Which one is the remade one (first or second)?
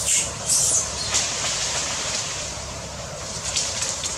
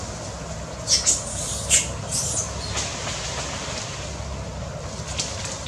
first